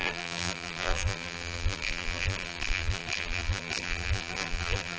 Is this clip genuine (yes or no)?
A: no